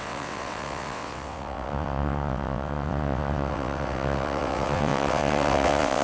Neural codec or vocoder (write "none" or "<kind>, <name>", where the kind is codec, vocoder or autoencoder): vocoder, WaveNeXt